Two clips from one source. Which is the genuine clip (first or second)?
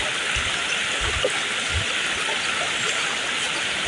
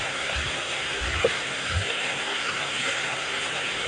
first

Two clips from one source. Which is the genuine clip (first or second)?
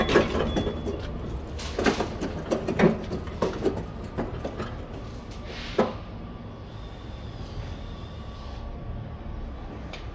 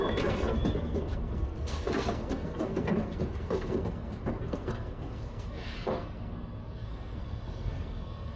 first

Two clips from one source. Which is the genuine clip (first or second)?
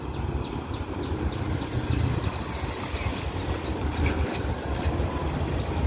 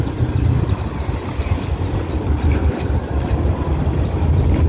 first